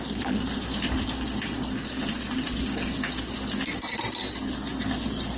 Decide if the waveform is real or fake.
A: real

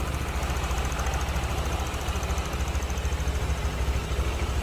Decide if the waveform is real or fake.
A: real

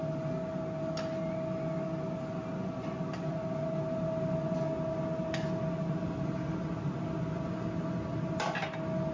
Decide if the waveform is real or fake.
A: real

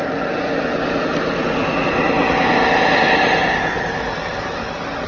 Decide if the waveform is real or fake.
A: real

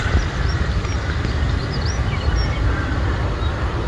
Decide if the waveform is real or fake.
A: real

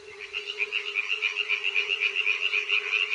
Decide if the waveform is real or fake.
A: real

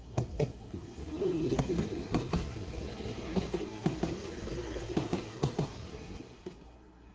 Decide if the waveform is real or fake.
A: fake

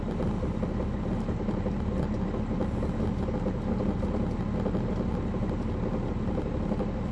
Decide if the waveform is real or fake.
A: real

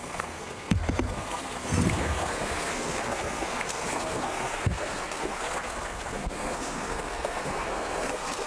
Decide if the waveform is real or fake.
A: fake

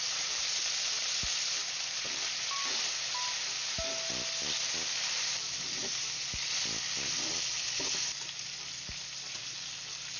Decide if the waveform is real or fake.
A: real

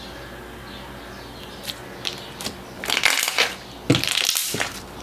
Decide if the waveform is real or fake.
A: real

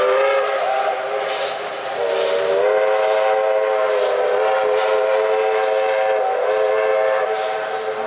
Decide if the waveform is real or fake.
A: real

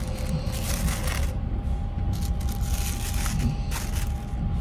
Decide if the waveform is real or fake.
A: real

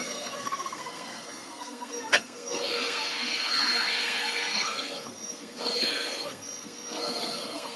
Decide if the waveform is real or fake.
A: fake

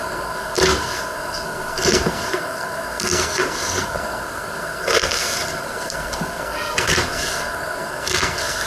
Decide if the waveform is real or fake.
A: fake